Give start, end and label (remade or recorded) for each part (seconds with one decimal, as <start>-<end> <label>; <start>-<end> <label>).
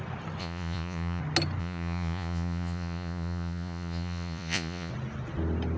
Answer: 0.0-0.4 recorded; 0.4-1.2 remade; 1.2-1.6 recorded; 1.6-4.9 remade; 4.9-5.8 recorded